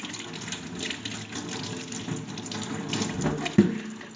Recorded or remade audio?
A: recorded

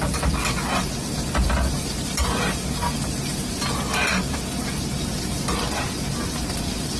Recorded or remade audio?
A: recorded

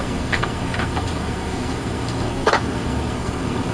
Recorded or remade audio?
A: remade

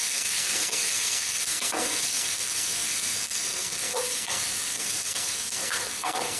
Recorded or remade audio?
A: remade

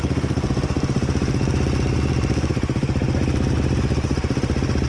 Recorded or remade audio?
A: recorded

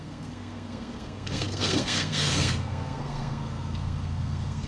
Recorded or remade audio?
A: remade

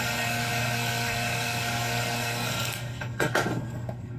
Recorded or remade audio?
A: remade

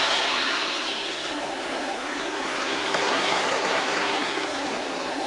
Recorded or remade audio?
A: remade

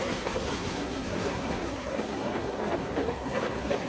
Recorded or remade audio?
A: remade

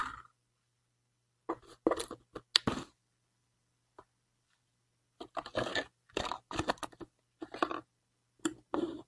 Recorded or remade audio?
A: recorded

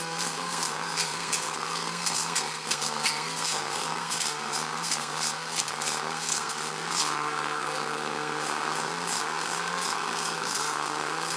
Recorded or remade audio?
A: remade